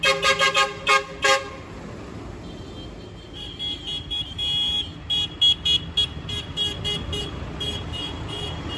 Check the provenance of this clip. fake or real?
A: real